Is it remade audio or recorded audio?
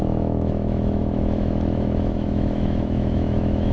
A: remade